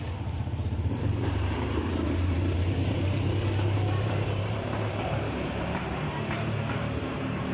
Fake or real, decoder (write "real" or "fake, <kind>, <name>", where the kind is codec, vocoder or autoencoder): fake, vocoder, BigVGAN v2